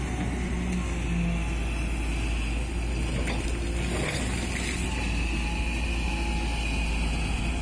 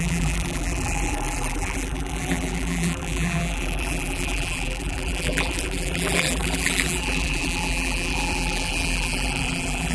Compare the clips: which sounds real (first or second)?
first